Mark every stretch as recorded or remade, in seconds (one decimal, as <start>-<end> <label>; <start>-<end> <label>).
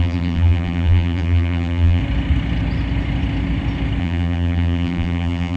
0.0-2.0 remade; 2.0-4.0 recorded; 4.0-5.6 remade